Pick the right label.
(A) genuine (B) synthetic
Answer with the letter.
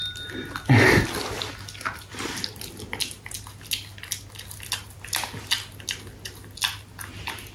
A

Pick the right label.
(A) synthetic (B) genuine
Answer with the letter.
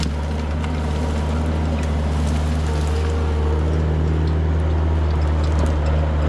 B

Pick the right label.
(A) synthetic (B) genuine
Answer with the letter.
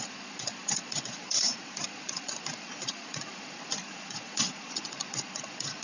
A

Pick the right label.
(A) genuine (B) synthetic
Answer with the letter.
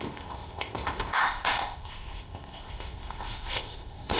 B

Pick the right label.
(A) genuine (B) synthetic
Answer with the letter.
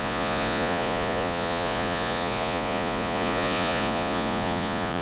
B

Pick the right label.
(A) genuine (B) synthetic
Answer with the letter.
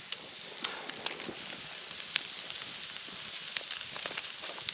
A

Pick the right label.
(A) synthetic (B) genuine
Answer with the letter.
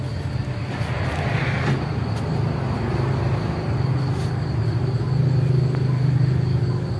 B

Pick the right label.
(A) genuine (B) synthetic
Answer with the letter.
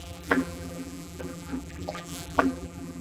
B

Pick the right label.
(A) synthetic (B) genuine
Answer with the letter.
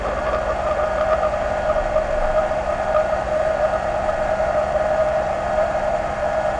A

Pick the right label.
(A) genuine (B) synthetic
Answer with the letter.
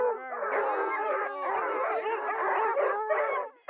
A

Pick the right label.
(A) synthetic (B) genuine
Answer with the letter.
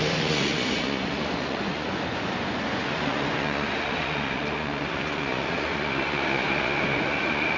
A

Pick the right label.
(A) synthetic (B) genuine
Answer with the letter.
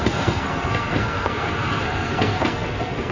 A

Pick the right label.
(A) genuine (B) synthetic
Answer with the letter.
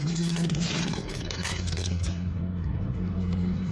B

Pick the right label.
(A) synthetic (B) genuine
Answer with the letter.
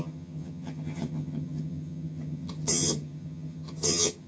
A